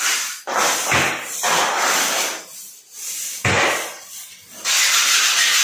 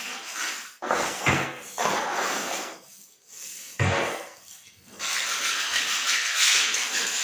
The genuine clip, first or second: first